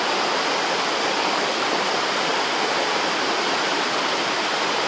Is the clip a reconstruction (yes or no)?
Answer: no